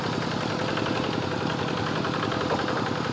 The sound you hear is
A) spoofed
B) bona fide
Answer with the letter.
B